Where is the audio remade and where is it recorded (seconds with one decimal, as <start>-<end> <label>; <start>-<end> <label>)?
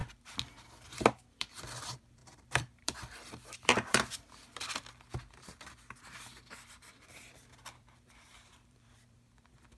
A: 0.0-1.1 recorded; 1.1-9.8 remade